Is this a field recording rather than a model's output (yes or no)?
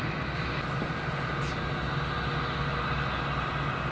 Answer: yes